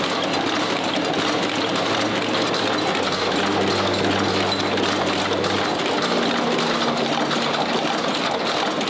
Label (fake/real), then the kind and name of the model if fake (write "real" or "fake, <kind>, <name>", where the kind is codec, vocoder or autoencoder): real